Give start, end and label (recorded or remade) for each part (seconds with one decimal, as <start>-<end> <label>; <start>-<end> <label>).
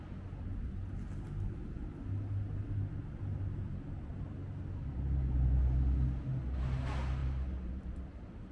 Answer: 0.0-7.2 recorded; 7.2-7.8 remade; 7.8-8.5 recorded